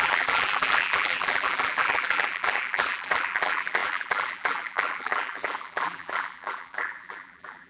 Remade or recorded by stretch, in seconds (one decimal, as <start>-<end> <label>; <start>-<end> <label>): 0.0-7.7 remade